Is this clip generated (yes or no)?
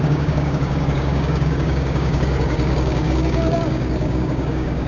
yes